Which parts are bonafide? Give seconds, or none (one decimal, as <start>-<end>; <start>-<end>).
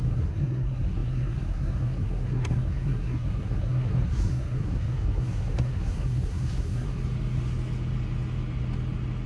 7.0-9.3